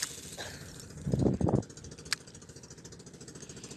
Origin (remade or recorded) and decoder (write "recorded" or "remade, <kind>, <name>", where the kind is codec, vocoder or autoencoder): recorded